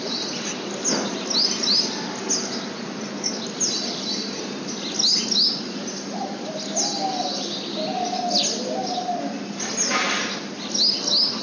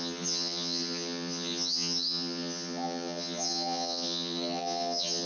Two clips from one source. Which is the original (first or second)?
first